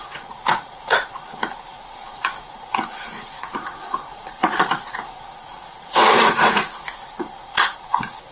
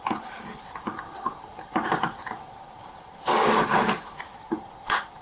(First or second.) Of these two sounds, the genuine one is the second